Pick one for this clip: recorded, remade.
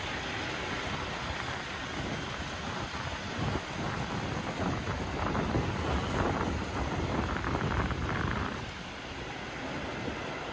recorded